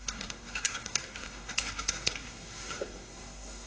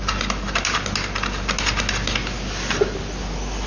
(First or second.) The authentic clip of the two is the second